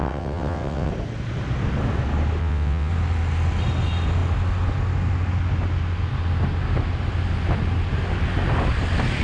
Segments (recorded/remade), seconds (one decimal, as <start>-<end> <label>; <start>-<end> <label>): 0.0-0.9 remade; 0.9-2.4 recorded; 2.4-2.9 remade; 2.9-9.2 recorded